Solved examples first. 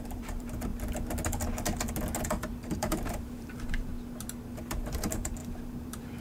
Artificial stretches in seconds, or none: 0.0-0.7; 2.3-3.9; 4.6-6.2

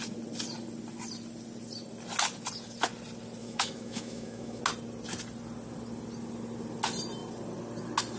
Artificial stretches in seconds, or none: 3.4-4.6

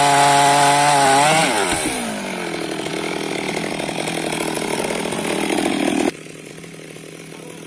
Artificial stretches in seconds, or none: none

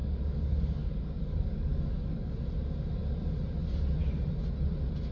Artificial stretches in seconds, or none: 0.0-2.3